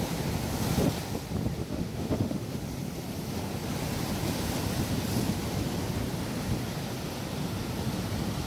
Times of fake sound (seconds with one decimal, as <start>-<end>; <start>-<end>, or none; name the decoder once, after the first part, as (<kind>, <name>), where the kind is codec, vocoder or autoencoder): 1.6-2.6 (autoencoder, DAC-VAE)